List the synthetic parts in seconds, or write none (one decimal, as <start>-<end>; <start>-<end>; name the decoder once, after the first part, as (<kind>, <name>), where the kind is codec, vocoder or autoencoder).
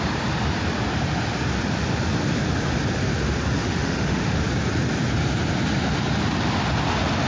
3.6-4.4 (autoencoder, DAC-VAE)